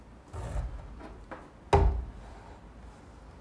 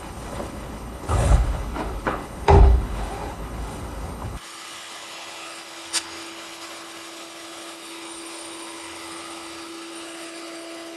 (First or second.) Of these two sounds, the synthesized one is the second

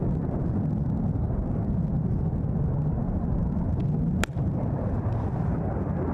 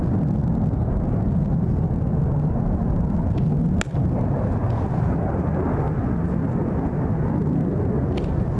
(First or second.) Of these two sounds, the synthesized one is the first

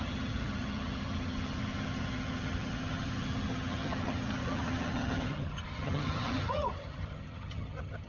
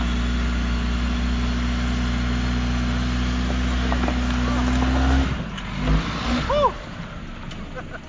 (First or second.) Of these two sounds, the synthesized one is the first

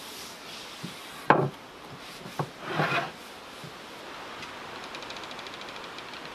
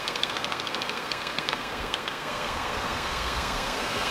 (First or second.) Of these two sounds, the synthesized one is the second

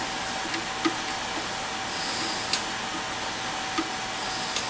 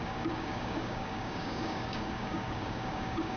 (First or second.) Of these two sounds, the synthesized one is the second